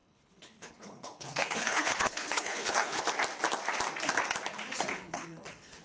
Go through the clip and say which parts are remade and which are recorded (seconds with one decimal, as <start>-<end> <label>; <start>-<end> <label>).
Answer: 0.0-3.0 remade; 3.0-4.9 recorded; 4.9-5.8 remade

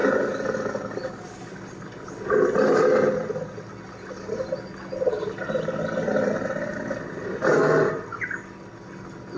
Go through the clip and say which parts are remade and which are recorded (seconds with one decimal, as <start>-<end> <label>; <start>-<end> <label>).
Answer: 0.0-9.4 recorded

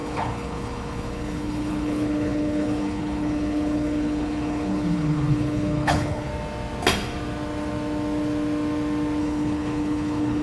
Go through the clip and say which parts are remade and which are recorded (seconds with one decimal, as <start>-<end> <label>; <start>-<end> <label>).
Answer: 0.0-6.3 remade; 6.3-9.2 recorded; 9.2-10.4 remade

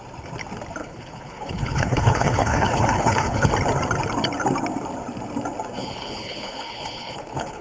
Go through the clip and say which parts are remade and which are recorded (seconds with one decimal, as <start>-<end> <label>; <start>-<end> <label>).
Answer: 0.0-0.8 recorded; 0.8-3.5 remade; 3.5-5.8 recorded; 5.8-7.6 remade

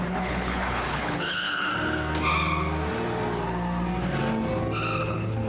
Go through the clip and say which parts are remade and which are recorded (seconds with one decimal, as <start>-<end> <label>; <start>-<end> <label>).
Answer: 0.0-1.7 remade; 1.7-5.0 recorded; 5.0-5.5 remade